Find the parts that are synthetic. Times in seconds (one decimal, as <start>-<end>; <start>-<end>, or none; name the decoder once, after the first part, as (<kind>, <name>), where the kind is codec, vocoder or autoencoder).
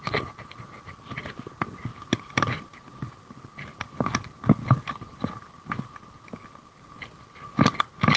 none